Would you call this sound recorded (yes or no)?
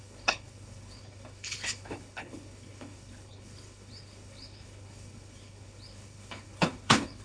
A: no